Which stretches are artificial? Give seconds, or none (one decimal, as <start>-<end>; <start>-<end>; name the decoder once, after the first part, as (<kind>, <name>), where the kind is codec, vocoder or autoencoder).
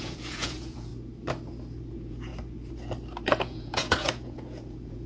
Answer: 0.0-0.9 (vocoder, Vocos); 1.9-2.3; 3.2-5.1